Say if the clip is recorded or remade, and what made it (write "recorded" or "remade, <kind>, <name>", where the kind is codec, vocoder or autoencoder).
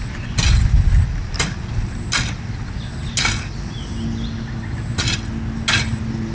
recorded